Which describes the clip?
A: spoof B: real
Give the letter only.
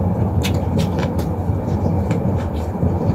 A